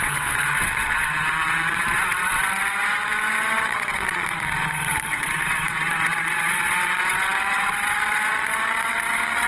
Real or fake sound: fake